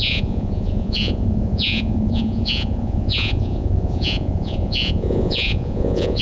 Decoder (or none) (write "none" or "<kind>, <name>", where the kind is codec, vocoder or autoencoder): vocoder, Vocos